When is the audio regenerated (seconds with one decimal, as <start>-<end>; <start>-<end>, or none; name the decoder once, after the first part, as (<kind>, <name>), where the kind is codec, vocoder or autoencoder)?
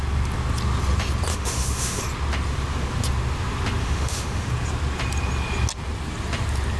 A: 1.3-2.0 (autoencoder, DAC-VAE); 3.8-4.5